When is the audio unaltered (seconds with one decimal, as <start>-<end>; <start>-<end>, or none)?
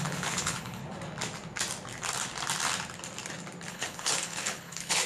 0.8-3.7